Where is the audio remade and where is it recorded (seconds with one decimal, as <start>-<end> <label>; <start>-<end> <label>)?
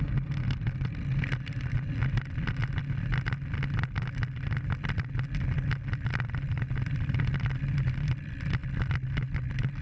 0.0-2.8 remade; 2.8-6.1 recorded; 6.1-8.6 remade; 8.6-9.8 recorded